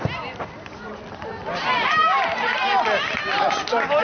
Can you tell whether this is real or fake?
real